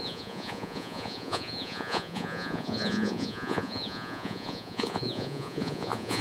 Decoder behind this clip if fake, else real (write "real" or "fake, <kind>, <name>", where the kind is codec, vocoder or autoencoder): fake, vocoder, Vocos